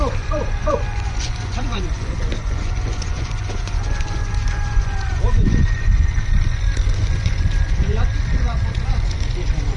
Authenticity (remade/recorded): remade